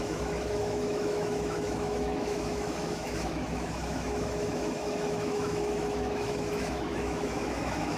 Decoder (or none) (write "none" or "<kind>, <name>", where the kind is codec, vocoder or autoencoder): autoencoder, DAC-VAE